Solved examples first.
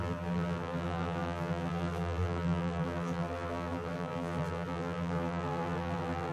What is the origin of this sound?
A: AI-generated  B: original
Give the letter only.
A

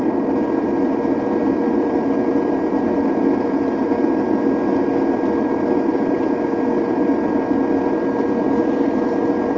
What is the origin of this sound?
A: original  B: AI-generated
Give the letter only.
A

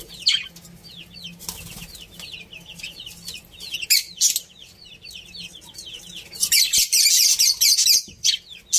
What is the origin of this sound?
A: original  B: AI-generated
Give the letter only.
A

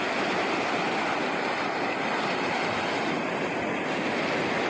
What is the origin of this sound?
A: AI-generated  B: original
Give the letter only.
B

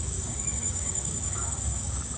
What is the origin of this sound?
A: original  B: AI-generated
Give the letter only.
B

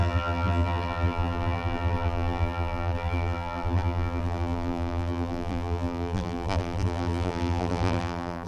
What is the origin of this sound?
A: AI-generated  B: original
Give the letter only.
A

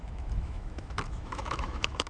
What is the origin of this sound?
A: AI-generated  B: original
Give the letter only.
A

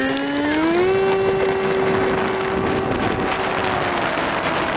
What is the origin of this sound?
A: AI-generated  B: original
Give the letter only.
B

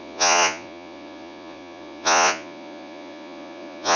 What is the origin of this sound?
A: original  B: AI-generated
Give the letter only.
B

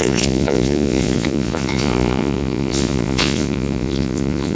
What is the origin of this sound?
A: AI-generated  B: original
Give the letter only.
A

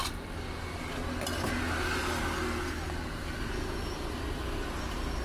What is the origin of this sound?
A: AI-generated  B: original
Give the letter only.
B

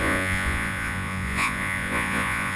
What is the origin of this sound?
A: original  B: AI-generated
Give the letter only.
B